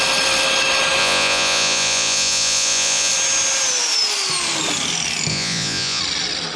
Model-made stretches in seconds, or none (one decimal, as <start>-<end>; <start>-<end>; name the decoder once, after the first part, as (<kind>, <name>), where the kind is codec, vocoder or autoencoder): 1.0-3.1 (vocoder, Vocos); 5.3-6.0